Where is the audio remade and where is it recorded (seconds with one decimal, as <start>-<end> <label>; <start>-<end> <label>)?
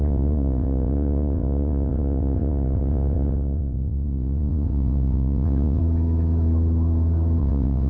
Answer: 0.0-5.8 remade; 5.8-7.4 recorded; 7.4-7.9 remade